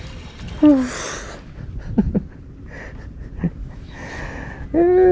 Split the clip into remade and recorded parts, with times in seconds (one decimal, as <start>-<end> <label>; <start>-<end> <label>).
0.0-3.6 recorded; 3.6-4.2 remade; 4.2-5.1 recorded